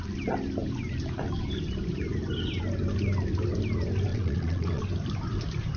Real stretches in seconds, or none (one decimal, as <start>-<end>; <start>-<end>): 0.0-4.1; 4.8-5.8